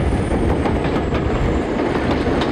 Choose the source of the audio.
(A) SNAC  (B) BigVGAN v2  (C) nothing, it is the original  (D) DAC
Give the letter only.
C